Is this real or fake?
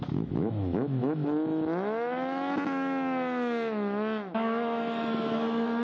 fake